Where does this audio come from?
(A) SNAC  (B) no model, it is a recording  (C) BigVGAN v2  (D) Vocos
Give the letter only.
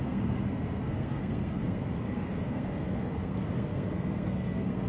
A